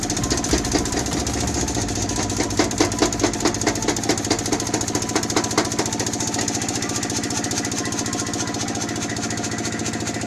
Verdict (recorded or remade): recorded